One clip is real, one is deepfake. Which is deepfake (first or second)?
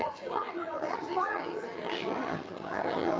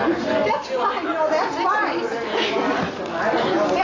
first